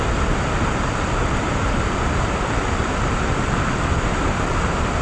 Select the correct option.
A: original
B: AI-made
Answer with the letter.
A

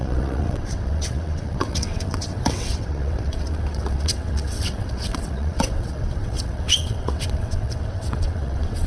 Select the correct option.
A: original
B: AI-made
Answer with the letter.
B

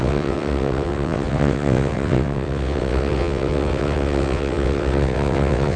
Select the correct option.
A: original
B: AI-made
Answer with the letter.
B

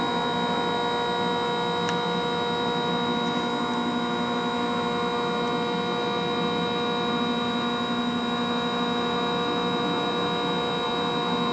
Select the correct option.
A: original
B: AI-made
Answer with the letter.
A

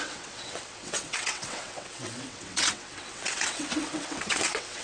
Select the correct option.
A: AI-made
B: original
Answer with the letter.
A